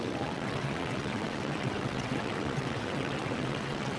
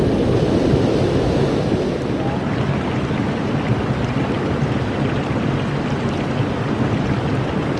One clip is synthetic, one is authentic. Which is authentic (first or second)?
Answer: second